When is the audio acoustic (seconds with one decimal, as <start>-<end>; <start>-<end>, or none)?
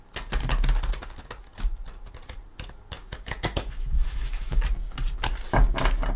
0.0-3.0; 4.7-6.2